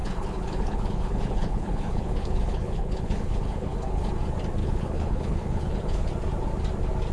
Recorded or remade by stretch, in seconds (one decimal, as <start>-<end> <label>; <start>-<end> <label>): 0.0-4.1 remade; 4.1-4.6 recorded; 4.6-6.1 remade; 6.1-7.1 recorded